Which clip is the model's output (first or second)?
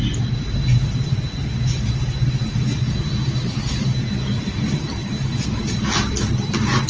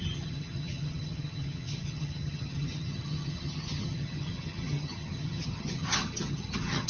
second